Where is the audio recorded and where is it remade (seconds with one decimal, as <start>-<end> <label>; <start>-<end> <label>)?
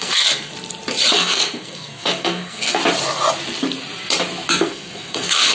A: 0.0-0.5 remade; 0.5-1.1 recorded; 1.1-2.8 remade; 2.8-4.5 recorded; 4.5-5.5 remade